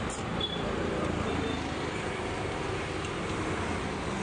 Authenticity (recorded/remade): recorded